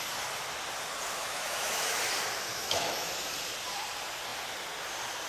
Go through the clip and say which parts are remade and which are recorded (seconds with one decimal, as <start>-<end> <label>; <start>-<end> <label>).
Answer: 0.0-1.2 recorded; 1.2-2.0 remade; 2.0-2.5 recorded; 2.5-3.1 remade; 3.1-5.3 recorded